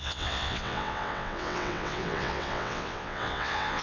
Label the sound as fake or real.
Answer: fake